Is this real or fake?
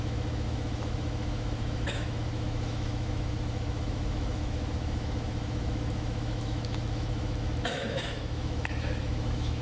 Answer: fake